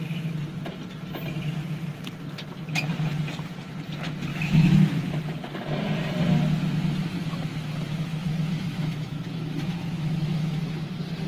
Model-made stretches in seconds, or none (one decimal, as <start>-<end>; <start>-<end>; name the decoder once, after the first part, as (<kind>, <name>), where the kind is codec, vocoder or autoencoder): 4.3-4.9 (autoencoder, DAC-VAE); 8.2-10.6